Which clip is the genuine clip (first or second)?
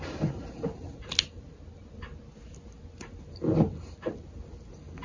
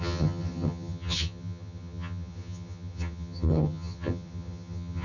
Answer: first